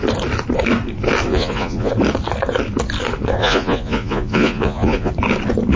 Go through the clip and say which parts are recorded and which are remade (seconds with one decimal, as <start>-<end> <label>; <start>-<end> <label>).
0.0-1.3 recorded; 1.3-1.9 remade; 1.9-3.4 recorded; 3.4-5.1 remade; 5.1-5.8 recorded